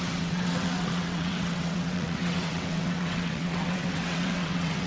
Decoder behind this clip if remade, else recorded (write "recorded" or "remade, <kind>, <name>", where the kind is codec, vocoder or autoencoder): remade, vocoder, WaveNeXt